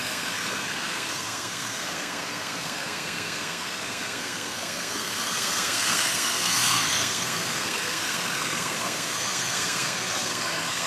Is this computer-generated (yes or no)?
yes